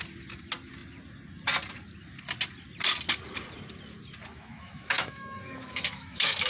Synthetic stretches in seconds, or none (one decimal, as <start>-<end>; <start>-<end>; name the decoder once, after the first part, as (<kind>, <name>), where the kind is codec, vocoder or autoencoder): 4.3-6.5 (autoencoder, DAC-VAE)